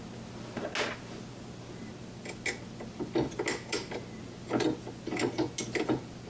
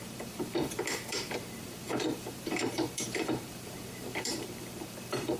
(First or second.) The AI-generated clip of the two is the second